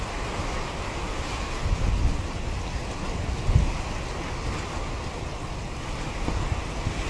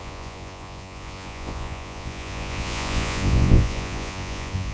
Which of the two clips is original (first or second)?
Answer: first